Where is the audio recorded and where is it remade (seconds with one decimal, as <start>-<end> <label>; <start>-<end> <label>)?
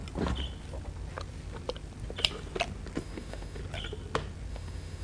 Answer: 0.0-3.0 recorded; 3.0-3.6 remade; 3.6-4.5 recorded; 4.5-5.0 remade